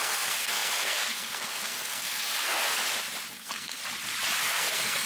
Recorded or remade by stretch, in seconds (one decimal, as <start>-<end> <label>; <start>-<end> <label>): 0.0-2.8 remade; 2.8-3.3 recorded; 3.3-3.8 remade; 3.8-4.4 recorded; 4.4-5.1 remade

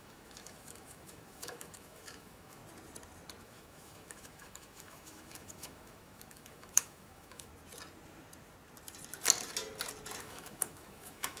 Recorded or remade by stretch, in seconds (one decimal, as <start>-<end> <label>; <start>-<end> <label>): 0.0-2.6 remade; 2.6-3.4 recorded; 3.4-7.5 remade; 7.5-10.2 recorded; 10.2-11.4 remade